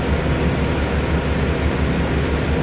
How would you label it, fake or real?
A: real